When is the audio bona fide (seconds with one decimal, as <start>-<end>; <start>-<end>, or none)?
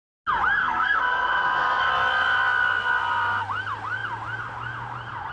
0.0-0.6; 1.9-5.3